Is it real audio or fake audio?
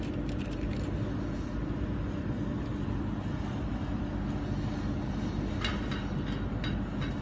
real